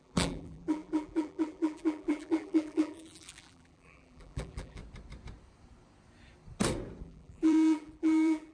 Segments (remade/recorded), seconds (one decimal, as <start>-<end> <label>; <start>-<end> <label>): 0.0-4.8 remade; 4.8-7.0 recorded; 7.0-8.5 remade